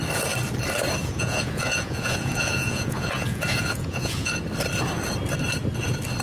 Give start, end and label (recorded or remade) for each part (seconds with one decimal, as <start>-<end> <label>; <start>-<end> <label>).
0.0-1.0 recorded; 1.0-4.3 remade; 4.3-6.2 recorded